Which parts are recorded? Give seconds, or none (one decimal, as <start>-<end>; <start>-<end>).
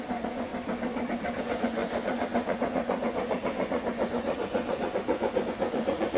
0.5-1.4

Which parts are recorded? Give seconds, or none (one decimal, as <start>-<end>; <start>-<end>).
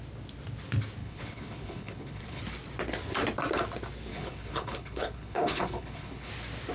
0.0-1.0; 2.4-4.1; 6.3-6.7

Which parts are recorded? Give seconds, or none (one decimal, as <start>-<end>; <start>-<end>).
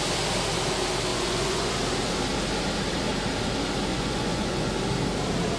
0.0-1.1; 1.7-3.9; 4.7-5.6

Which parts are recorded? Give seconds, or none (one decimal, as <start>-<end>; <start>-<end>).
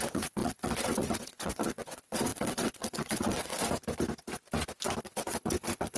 3.5-5.0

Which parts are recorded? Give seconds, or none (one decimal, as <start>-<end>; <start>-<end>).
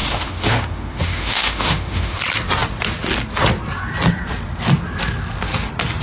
2.2-6.0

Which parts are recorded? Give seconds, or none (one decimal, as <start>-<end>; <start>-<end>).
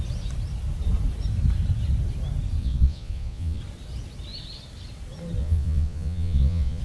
0.0-2.6; 3.6-5.4